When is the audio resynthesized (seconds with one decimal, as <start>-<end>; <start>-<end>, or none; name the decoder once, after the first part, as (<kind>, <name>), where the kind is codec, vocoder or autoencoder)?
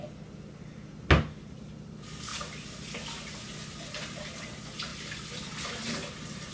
none